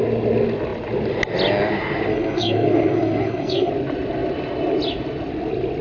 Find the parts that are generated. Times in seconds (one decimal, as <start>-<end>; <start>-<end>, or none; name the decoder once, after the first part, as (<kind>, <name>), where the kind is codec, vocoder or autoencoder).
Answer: 2.1-3.7 (codec, SNAC)